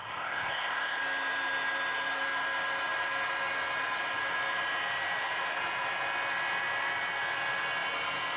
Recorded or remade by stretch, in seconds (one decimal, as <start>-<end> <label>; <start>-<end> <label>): 0.0-1.0 remade; 1.0-8.4 recorded